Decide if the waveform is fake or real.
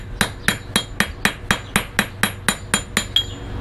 real